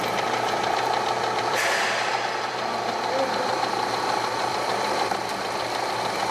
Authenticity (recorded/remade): remade